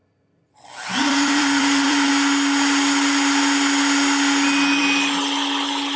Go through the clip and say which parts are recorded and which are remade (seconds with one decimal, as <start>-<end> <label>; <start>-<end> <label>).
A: 0.0-2.1 remade; 2.1-6.0 recorded